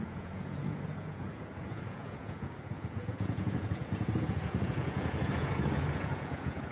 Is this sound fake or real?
fake